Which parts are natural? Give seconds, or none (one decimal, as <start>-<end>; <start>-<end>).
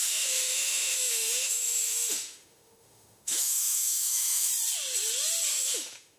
4.5-5.5